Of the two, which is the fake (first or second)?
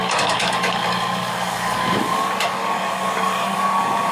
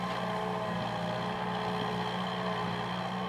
first